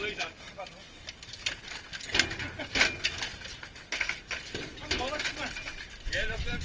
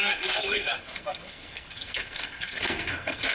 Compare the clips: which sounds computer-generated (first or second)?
second